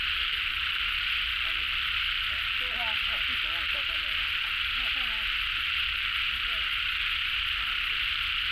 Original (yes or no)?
yes